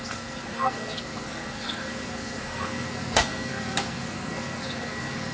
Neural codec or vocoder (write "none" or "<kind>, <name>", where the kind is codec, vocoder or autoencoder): codec, SNAC